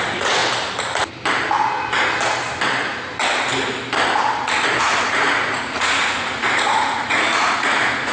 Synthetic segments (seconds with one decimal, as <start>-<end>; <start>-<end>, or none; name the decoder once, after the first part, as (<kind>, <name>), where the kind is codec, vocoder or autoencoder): 0.0-0.4 (vocoder, Vocos); 4.8-8.1